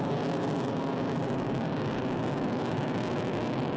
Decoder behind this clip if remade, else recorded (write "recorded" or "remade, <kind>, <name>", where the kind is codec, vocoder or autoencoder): recorded